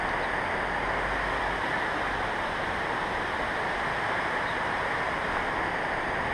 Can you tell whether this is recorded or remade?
recorded